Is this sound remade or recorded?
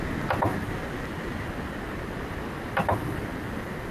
recorded